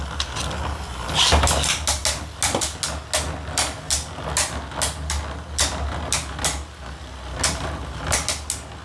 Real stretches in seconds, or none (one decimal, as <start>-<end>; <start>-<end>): 0.0-8.8